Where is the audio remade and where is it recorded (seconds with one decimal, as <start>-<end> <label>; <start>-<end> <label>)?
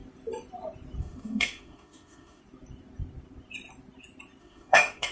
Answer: 0.0-1.0 recorded; 1.0-2.4 remade; 2.4-4.4 recorded; 4.4-5.1 remade